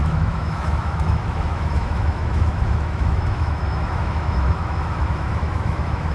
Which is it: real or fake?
fake